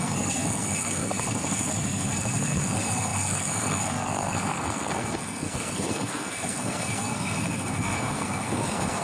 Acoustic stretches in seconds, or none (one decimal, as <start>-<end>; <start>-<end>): none